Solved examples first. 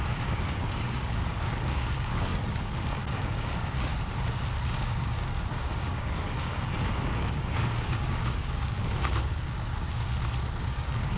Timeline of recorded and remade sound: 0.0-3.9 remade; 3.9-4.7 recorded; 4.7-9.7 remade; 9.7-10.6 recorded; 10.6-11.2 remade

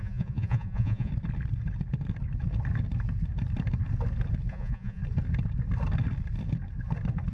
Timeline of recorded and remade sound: 0.0-1.1 remade; 1.1-4.5 recorded; 4.5-5.0 remade; 5.0-7.3 recorded